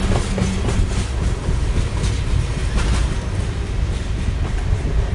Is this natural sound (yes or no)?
yes